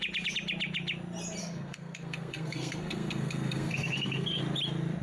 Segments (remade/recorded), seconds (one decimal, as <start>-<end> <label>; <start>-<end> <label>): 0.0-1.4 recorded; 1.4-4.4 remade; 4.4-5.0 recorded